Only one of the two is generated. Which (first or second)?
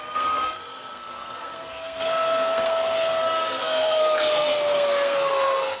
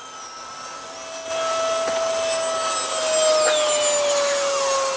first